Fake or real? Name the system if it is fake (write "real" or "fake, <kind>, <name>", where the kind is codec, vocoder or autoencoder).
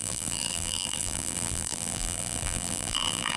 fake, vocoder, BigVGAN v2